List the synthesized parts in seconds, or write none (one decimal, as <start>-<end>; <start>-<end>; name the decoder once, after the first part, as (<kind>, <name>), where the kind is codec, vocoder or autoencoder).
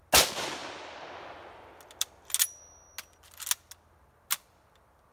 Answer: none